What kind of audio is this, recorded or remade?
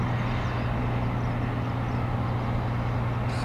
recorded